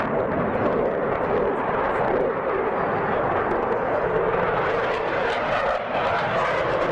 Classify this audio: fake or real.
real